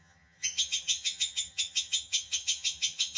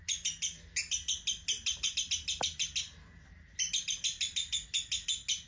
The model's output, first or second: first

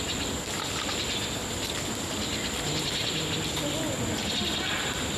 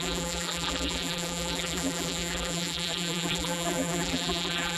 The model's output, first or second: second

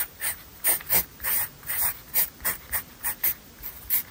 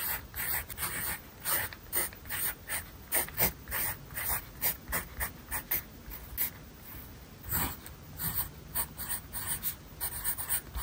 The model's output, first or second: first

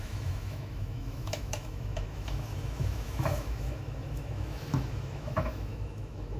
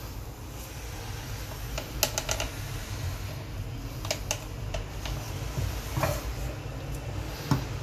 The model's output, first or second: first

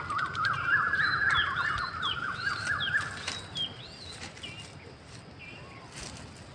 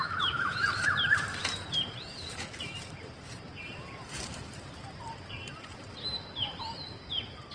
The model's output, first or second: second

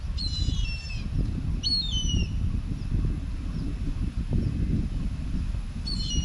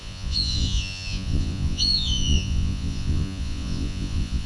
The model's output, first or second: second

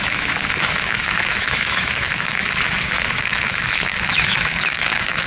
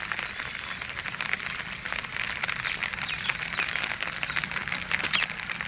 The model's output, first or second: first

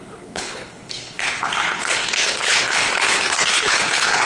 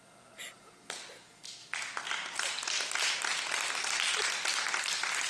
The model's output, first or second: first